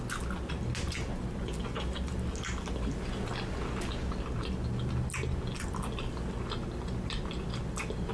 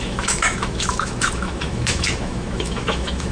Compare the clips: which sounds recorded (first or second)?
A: first